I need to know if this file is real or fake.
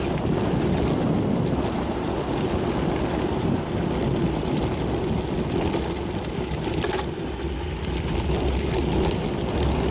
real